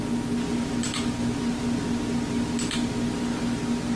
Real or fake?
real